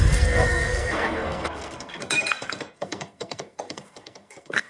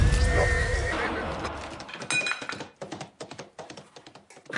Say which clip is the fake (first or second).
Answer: first